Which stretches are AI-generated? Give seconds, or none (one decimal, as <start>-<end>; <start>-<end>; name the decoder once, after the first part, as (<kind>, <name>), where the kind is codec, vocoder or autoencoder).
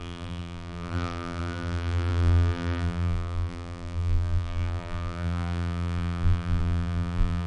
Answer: 0.0-7.5 (vocoder, BigVGAN v2)